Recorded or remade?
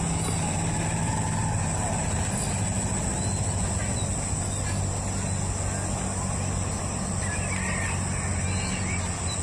recorded